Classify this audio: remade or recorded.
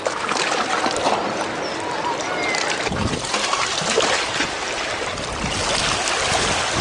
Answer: recorded